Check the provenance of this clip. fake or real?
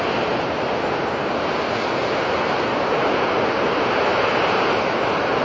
real